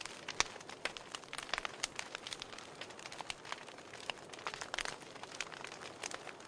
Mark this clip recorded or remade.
recorded